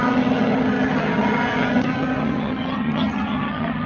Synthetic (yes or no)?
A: yes